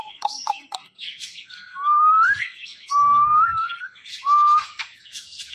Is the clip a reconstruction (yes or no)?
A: yes